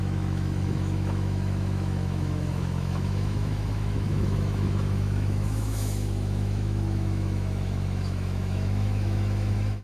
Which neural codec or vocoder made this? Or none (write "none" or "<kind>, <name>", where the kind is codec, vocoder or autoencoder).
autoencoder, DAC-VAE